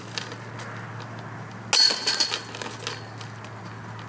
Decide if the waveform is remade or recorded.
recorded